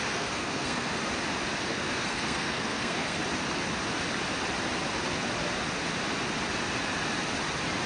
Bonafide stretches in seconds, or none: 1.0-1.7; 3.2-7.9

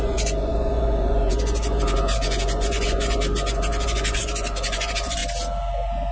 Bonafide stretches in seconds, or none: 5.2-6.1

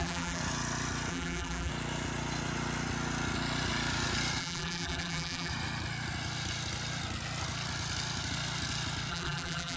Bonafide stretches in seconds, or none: 0.4-1.1; 1.7-4.4; 5.5-9.1

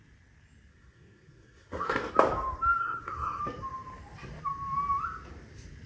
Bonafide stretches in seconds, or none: 0.0-0.7; 2.1-2.8; 3.4-5.9